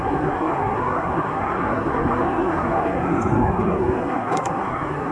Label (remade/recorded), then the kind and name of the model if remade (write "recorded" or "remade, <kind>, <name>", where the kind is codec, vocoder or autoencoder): remade, codec, SNAC